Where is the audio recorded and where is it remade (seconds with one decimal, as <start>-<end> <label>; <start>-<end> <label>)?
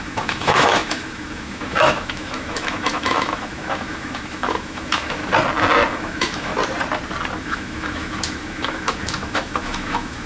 0.0-5.2 remade; 5.2-5.9 recorded; 5.9-6.5 remade; 6.5-7.4 recorded; 7.4-10.3 remade